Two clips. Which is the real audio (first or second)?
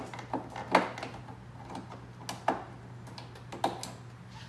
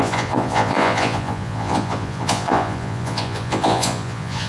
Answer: first